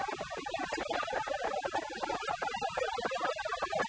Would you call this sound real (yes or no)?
yes